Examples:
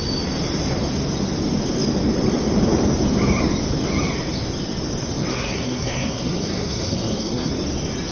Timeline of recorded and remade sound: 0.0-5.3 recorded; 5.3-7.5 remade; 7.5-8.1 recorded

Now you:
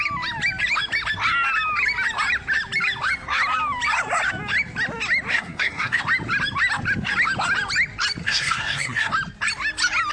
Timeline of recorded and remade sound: 0.0-5.3 recorded; 5.3-6.0 remade; 6.0-8.2 recorded; 8.2-9.1 remade; 9.1-10.1 recorded

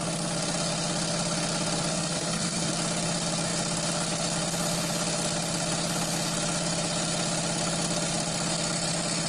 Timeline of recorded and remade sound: 0.0-1.9 recorded; 1.9-2.7 remade; 2.7-9.3 recorded

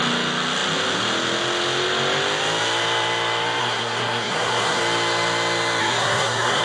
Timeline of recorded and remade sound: 0.0-3.6 recorded; 3.6-4.8 remade; 4.8-5.8 recorded; 5.8-6.6 remade

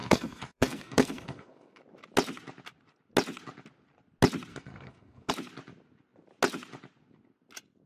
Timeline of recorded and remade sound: 0.0-1.8 remade; 1.8-4.5 recorded; 4.5-5.3 remade; 5.3-7.9 recorded

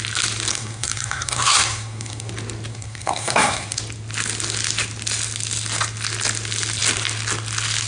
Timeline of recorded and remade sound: 0.0-0.5 recorded; 0.5-2.3 remade; 2.3-2.7 recorded; 2.7-3.8 remade; 3.8-7.9 recorded